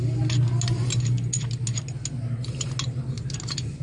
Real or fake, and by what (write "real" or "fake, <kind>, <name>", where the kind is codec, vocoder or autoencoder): real